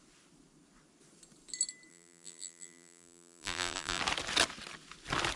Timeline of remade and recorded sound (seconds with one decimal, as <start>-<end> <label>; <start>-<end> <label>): 0.0-1.9 recorded; 1.9-4.0 remade; 4.0-5.4 recorded